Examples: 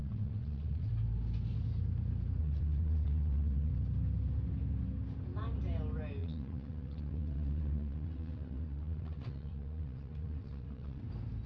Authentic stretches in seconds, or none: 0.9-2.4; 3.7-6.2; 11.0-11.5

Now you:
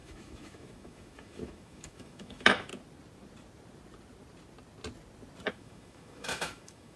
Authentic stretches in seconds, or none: 2.7-5.5

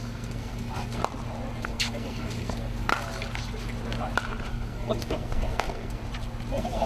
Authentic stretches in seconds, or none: 1.0-1.6; 2.9-4.5; 6.0-6.5

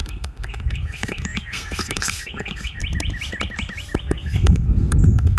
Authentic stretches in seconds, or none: 2.8-4.0

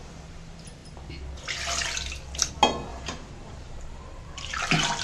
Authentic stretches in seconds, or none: 0.0-2.9; 4.6-5.0

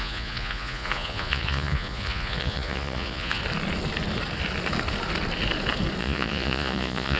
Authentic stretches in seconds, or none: 3.4-6.0

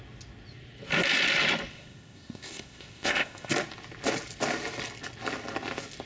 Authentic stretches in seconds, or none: 0.0-1.7; 3.5-6.1

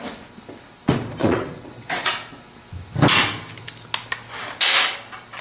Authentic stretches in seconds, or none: 0.0-1.2; 2.1-5.4